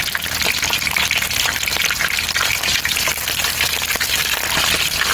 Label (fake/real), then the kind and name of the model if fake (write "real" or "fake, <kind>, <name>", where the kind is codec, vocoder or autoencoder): real